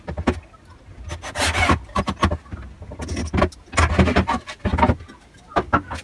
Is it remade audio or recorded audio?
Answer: recorded